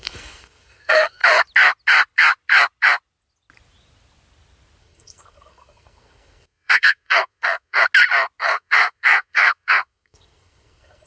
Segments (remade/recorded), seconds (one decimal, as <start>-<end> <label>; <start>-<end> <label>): 0.0-1.2 remade; 1.2-4.8 recorded; 4.8-7.8 remade; 7.8-8.4 recorded; 8.4-11.1 remade